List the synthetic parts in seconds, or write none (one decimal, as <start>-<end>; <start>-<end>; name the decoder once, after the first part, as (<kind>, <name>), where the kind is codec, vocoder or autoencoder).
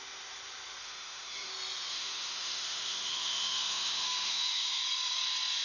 0.8-1.5 (autoencoder, DAC-VAE); 1.9-4.8